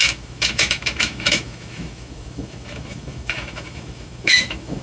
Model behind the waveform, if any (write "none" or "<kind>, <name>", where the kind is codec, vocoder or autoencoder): autoencoder, DAC-VAE